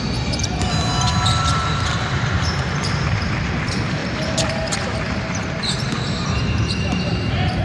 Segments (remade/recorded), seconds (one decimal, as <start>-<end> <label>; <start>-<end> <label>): 0.0-0.4 remade; 0.4-1.4 recorded; 1.4-4.0 remade; 4.0-5.9 recorded; 5.9-7.6 remade